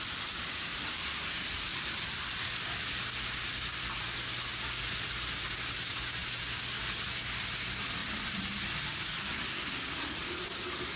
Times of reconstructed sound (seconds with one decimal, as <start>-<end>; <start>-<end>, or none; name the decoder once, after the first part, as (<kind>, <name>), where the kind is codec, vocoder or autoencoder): 0.7-1.5 (vocoder, BigVGAN v2); 8.0-8.7